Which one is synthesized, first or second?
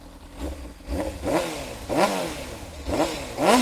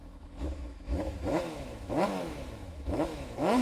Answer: second